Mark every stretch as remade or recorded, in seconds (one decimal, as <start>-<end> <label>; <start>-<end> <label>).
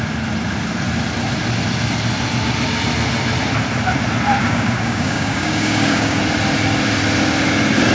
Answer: 0.0-4.4 recorded; 4.4-6.2 remade; 6.2-7.9 recorded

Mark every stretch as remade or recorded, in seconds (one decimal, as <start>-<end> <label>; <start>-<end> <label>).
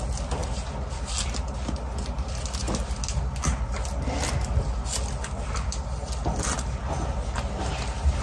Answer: 0.0-8.2 recorded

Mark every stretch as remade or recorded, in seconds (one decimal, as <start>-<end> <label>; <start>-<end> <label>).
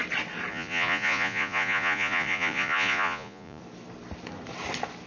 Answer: 0.0-0.5 recorded; 0.5-3.6 remade; 3.6-5.1 recorded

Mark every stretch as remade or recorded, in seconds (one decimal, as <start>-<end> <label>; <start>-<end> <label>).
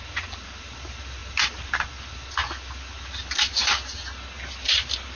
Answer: 0.0-5.2 recorded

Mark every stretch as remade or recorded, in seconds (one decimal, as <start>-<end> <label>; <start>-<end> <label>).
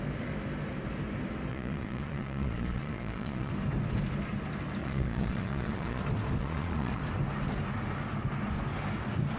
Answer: 0.0-1.5 recorded; 1.5-3.5 remade; 3.5-4.8 recorded; 4.8-6.0 remade; 6.0-6.4 recorded; 6.4-7.0 remade; 7.0-9.4 recorded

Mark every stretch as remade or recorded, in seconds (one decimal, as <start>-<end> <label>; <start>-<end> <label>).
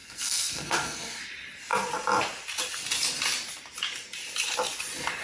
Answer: 0.0-1.2 remade; 1.2-5.2 recorded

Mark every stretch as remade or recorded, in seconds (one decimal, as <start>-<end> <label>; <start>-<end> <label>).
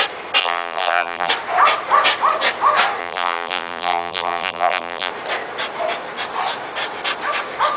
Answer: 0.0-0.4 recorded; 0.4-1.3 remade; 1.3-3.0 recorded; 3.0-5.1 remade; 5.1-7.8 recorded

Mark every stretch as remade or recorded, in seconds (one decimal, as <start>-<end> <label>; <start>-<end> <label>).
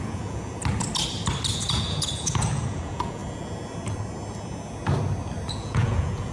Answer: 0.0-0.6 remade; 0.6-1.5 recorded; 1.5-3.2 remade; 3.2-5.5 recorded; 5.5-6.3 remade